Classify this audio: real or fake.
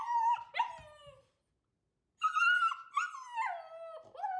real